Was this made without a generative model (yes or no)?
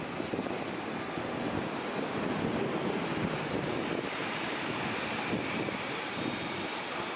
yes